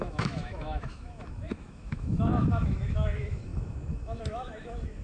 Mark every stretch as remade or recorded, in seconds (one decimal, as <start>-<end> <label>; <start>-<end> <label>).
0.0-5.0 remade